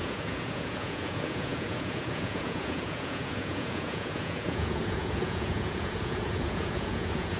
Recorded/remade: remade